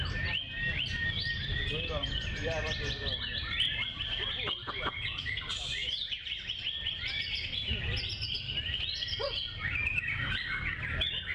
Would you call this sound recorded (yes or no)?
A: no